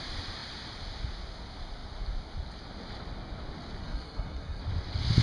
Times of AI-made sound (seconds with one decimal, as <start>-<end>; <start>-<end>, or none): 3.8-4.6